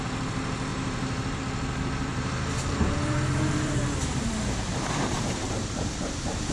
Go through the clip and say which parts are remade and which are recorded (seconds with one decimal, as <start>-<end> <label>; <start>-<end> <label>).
0.0-0.7 recorded; 0.7-1.4 remade; 1.4-2.1 recorded; 2.1-6.0 remade; 6.0-6.5 recorded

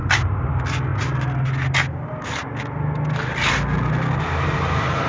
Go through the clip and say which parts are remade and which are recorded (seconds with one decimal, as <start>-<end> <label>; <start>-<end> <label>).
0.0-0.5 remade; 0.5-5.1 recorded